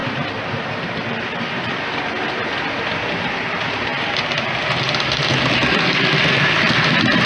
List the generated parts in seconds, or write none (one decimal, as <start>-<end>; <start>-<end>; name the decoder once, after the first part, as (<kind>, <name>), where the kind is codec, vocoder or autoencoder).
0.0-3.9 (vocoder, BigVGAN v2); 6.1-7.3